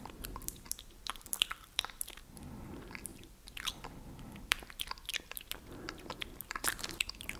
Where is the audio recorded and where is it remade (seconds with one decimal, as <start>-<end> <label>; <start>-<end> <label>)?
0.0-3.1 remade; 3.1-4.1 recorded; 4.1-7.4 remade